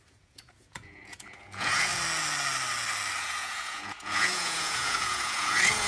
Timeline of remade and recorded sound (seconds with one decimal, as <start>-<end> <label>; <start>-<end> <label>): 0.0-1.9 remade; 1.9-3.2 recorded; 3.2-5.9 remade